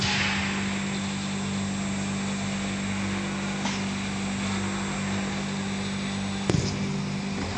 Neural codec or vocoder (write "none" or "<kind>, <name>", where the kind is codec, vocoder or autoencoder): none